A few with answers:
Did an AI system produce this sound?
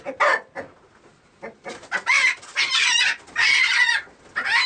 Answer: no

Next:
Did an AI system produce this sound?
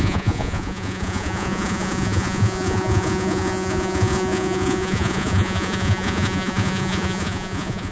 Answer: yes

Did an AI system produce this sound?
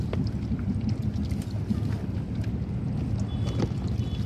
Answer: no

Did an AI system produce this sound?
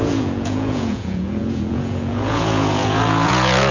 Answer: yes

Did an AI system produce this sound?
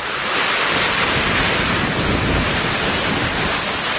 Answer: no